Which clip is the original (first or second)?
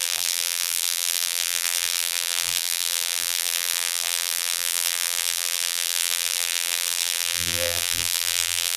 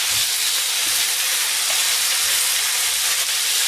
second